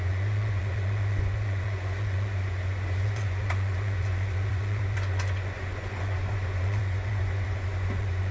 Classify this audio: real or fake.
fake